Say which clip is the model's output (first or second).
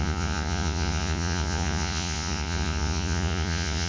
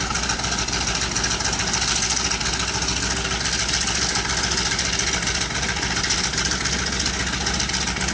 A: first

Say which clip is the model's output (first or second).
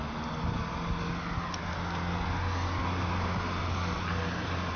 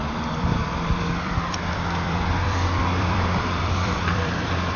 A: second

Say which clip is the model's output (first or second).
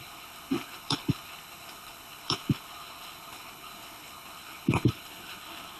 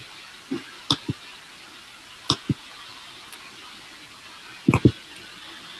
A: first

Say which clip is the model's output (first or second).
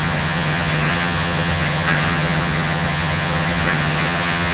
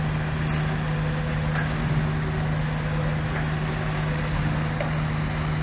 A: first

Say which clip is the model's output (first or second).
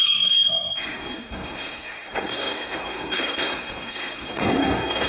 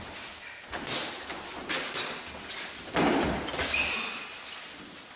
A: first